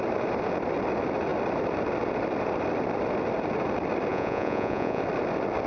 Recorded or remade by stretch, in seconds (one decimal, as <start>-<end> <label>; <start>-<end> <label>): 0.0-4.1 recorded; 4.1-5.0 remade; 5.0-5.7 recorded